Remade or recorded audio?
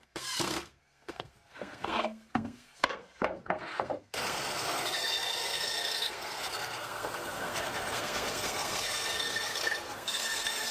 remade